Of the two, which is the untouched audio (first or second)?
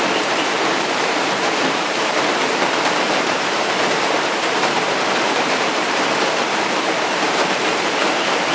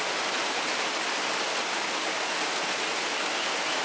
second